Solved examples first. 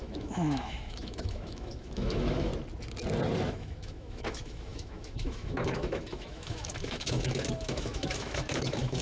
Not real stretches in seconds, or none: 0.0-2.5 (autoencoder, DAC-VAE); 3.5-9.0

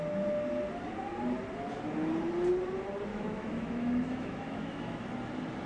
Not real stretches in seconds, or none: 3.1-5.1 (autoencoder, DAC-VAE)

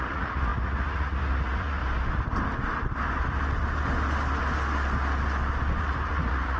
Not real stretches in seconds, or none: 0.0-1.8 (vocoder, Vocos); 5.8-6.6

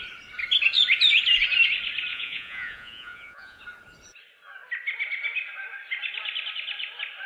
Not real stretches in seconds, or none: 2.1-3.6 (vocoder, Vocos)

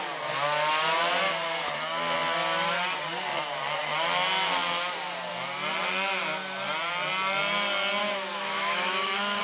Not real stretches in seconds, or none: 8.0-9.4 (autoencoder, DAC-VAE)

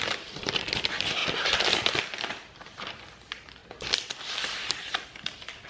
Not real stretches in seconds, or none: 0.0-3.6 (vocoder, BigVGAN v2); 4.2-5.7

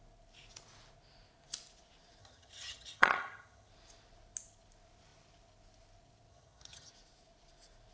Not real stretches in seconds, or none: 2.2-3.7 (vocoder, HiFi-GAN); 6.3-6.9

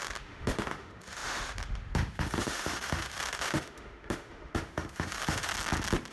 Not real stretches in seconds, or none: 0.0-5.5 (autoencoder, DAC-VAE)